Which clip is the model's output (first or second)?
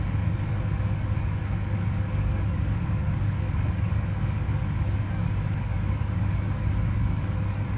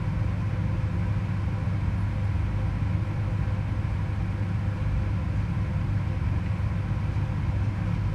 first